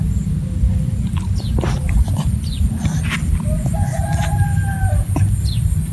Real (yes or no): yes